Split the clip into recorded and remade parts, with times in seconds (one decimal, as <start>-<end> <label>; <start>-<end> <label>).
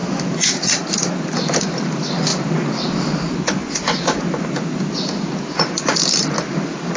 0.0-7.0 recorded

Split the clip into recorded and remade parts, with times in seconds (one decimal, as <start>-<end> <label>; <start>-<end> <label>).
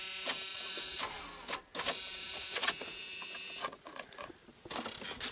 0.0-0.5 recorded; 0.5-1.0 remade; 1.0-2.1 recorded; 2.1-4.3 remade; 4.3-5.3 recorded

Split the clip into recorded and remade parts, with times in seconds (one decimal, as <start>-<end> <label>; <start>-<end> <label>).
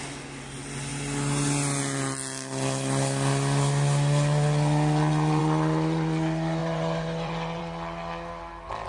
0.0-6.6 recorded; 6.6-7.6 remade; 7.6-8.9 recorded